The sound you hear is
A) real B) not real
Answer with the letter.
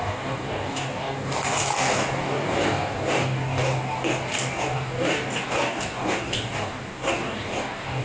B